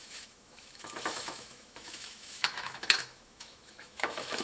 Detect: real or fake fake